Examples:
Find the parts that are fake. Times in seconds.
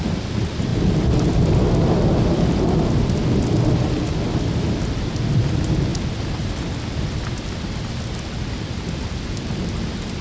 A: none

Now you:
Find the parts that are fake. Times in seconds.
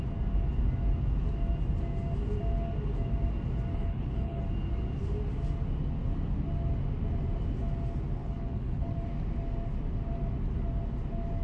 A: 3.7-4.4 (codec, HILCodec); 8.2-8.9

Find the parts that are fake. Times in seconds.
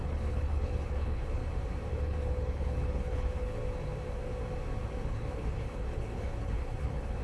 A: 0.0-1.4 (codec, HILCodec); 1.9-3.6; 5.0-7.2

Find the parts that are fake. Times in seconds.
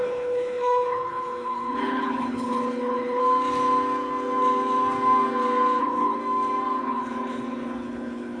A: 0.0-3.2 (codec, HILCodec); 5.8-6.2; 6.8-8.4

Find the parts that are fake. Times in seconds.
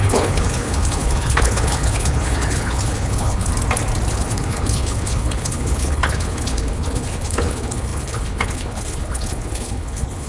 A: 0.0-3.5 (codec, HILCodec); 4.1-10.3